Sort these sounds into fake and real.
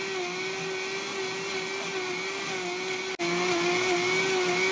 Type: real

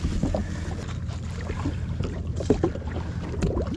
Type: real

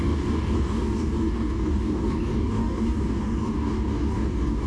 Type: fake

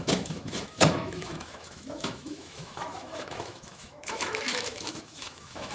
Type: fake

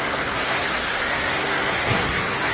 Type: fake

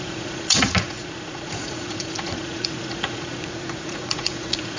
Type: fake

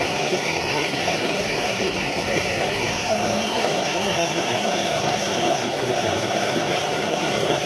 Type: fake